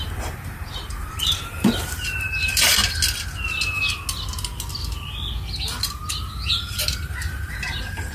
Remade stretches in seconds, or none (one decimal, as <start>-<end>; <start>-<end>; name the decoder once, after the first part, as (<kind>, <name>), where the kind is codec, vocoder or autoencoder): 0.0-2.8 (vocoder, BigVGAN v2); 6.5-8.1